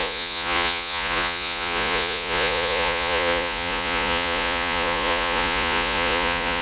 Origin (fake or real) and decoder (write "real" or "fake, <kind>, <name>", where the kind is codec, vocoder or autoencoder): fake, vocoder, Vocos